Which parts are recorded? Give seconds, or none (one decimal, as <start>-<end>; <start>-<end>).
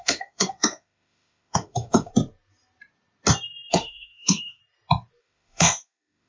2.1-3.7; 4.6-5.2